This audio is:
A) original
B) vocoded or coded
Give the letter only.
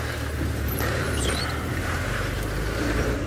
B